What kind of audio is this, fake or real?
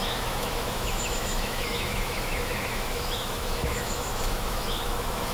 fake